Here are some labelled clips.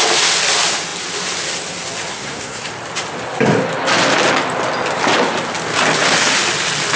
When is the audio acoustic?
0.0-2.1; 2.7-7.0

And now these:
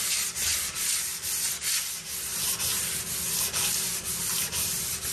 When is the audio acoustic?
0.0-5.1

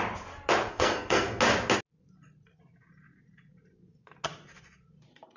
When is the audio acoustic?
0.0-0.7; 1.4-5.4